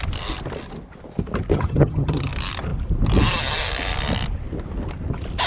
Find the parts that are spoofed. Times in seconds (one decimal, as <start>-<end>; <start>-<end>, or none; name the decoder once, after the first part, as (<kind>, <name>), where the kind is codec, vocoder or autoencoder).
1.5-2.3 (vocoder, HiFi-GAN)